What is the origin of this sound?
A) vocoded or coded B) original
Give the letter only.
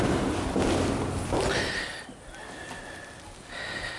B